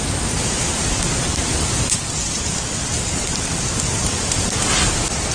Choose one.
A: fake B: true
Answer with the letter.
B